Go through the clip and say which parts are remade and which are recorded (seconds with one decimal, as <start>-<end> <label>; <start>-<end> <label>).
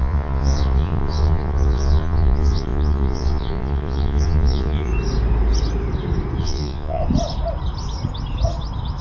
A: 0.0-4.9 remade; 4.9-6.4 recorded; 6.4-7.0 remade; 7.0-9.0 recorded